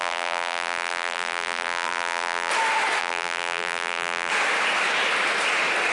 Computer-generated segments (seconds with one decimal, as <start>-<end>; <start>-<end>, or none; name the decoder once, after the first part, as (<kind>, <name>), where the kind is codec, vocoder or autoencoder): 0.0-2.5 (vocoder, BigVGAN v2); 3.0-4.3